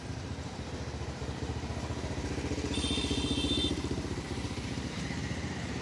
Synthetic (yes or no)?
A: yes